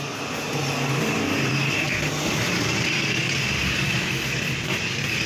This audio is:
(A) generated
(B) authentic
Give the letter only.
B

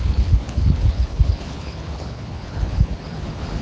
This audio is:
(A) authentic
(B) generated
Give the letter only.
B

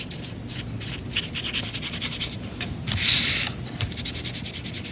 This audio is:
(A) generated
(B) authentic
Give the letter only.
B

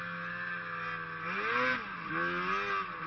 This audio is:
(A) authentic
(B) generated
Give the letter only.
A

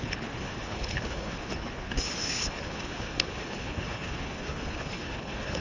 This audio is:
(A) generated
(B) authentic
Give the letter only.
A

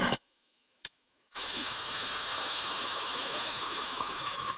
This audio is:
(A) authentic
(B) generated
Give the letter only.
B